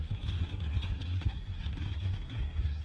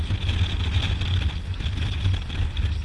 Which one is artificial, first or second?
first